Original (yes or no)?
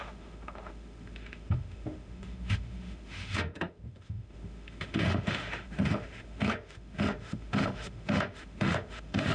no